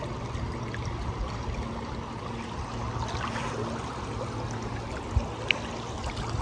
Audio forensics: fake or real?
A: real